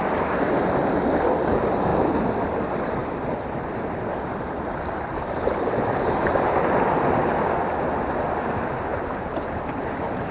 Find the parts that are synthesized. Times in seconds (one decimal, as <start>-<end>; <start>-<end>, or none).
8.9-10.3